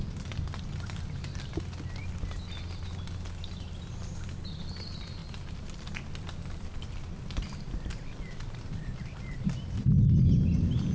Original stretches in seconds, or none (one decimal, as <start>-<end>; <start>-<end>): 0.0-5.2; 6.0-10.9